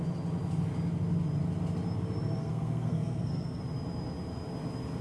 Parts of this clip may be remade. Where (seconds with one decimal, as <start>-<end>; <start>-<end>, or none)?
2.4-3.6